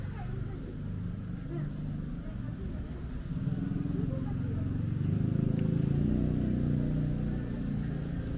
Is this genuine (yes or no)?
yes